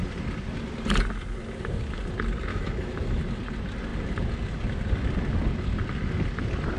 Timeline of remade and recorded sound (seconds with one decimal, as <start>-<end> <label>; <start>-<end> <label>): 0.0-2.5 recorded; 2.5-3.2 remade; 3.2-6.8 recorded